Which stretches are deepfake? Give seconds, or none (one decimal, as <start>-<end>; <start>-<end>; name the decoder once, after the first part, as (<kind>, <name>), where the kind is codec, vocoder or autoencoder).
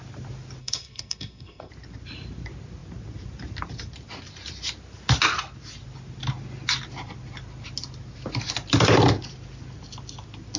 0.6-1.7 (codec, SNAC)